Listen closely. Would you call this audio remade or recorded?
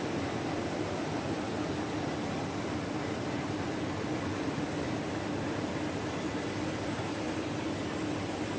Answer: recorded